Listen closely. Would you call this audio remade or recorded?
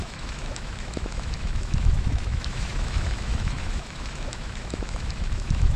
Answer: remade